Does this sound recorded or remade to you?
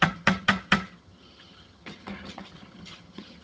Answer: remade